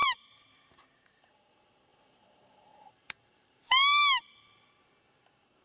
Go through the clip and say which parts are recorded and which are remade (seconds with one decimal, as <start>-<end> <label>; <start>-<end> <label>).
0.0-1.5 remade; 1.5-1.9 recorded; 1.9-4.0 remade; 4.0-5.6 recorded